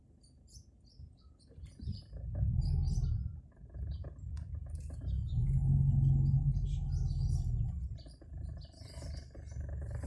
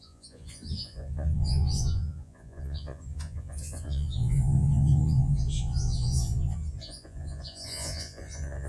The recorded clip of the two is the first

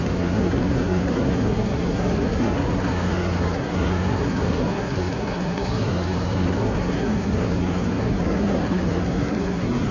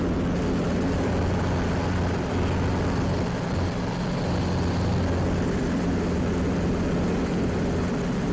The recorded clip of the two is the second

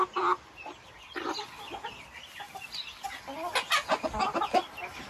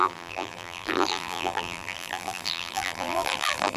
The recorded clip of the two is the first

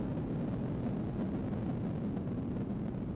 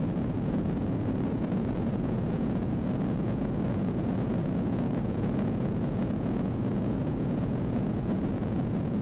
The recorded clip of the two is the first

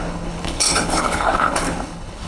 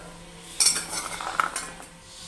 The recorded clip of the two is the second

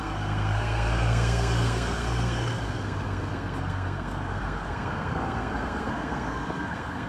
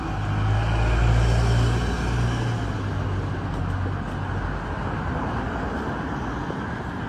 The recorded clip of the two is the second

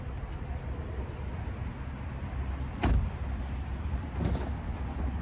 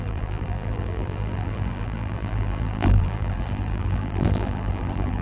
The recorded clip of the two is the first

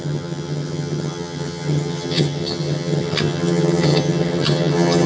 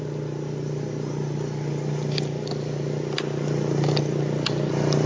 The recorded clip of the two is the second